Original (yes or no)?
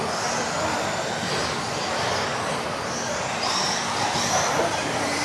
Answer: yes